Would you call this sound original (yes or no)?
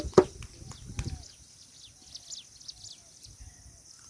yes